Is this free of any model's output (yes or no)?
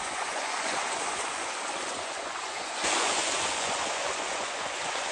no